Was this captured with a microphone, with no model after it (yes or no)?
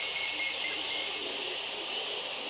yes